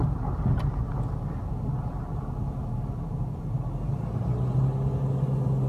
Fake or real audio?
real